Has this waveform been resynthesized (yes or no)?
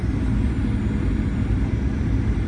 no